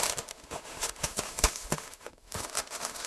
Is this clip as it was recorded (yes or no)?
no